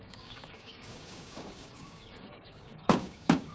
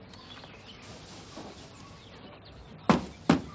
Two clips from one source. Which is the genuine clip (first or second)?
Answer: second